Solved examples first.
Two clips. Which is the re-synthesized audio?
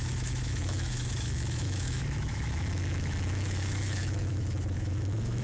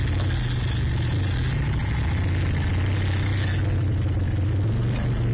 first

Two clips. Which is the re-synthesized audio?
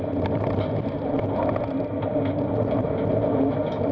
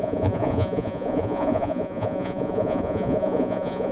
second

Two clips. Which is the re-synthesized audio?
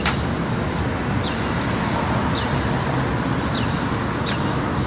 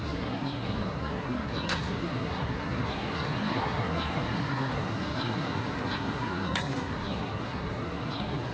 second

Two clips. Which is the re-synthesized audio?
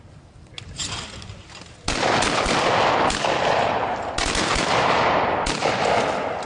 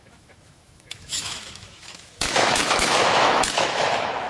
second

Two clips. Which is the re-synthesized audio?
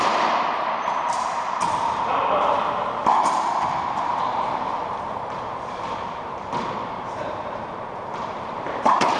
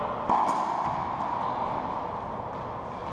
first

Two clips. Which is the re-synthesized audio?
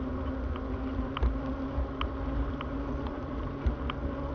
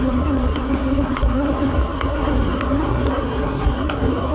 second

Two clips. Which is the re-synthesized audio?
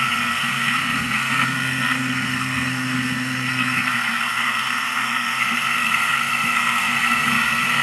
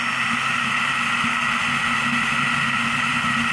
first